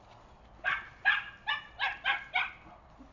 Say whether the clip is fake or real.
real